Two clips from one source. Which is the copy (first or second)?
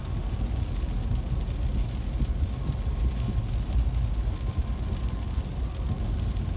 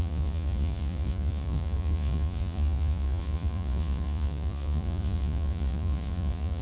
second